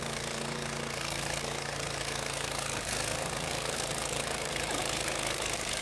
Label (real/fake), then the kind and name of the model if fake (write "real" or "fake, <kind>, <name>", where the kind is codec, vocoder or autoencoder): fake, codec, DAC